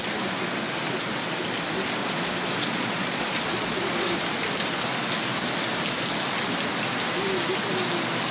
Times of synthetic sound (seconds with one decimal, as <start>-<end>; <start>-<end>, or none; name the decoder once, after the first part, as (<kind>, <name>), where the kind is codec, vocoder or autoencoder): 2.0-4.2 (vocoder, Vocos)